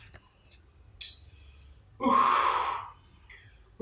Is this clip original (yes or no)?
yes